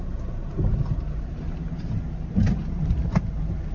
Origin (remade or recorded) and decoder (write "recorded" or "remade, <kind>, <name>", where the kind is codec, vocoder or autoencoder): recorded